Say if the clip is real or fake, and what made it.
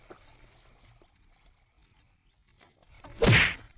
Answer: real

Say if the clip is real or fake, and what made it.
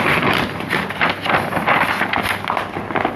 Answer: real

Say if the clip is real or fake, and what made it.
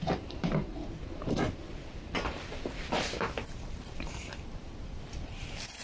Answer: fake, vocoder, BigVGAN v2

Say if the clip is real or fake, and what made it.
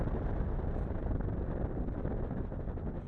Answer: real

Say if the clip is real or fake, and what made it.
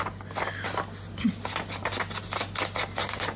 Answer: real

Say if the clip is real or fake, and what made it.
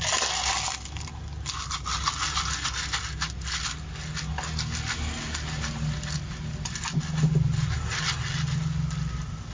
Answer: real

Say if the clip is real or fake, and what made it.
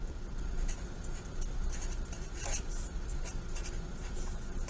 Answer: fake, vocoder, BigVGAN v2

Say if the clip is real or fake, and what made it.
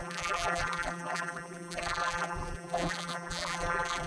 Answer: fake, vocoder, BigVGAN v2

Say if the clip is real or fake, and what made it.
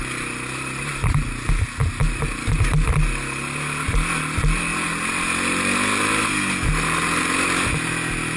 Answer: real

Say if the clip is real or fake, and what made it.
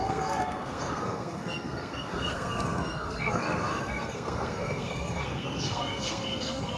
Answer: fake, codec, SNAC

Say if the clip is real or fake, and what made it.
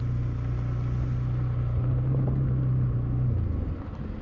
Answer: real